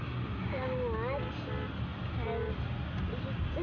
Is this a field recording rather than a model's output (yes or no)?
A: yes